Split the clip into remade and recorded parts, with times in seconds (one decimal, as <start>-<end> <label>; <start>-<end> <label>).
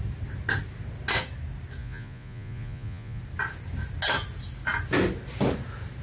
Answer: 0.0-1.8 recorded; 1.8-3.2 remade; 3.2-6.0 recorded